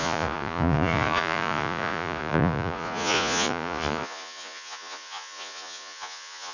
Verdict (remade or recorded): remade